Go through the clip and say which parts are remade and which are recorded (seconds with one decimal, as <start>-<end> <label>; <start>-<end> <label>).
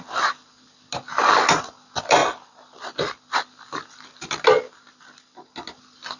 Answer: 0.0-6.2 recorded